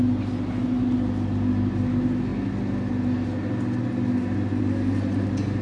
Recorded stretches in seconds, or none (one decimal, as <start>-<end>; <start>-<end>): 0.0-5.6